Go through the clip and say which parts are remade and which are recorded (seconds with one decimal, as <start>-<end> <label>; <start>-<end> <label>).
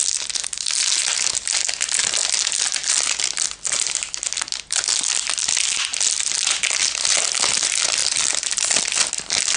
0.0-9.6 recorded